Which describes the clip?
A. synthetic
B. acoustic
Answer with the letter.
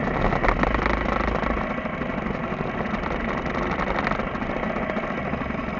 B